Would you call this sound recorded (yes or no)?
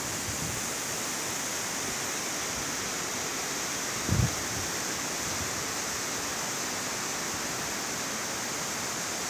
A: yes